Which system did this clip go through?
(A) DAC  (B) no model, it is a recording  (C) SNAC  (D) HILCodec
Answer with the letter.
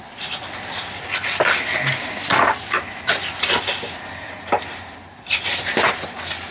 B